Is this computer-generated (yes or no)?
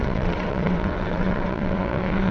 yes